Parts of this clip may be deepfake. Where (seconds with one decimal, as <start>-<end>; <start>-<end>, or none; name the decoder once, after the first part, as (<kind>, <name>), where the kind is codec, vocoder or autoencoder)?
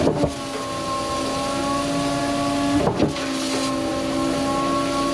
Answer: none